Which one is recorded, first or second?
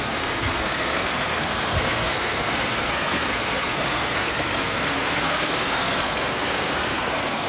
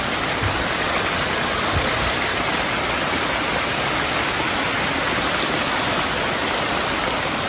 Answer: second